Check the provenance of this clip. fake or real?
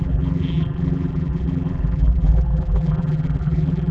fake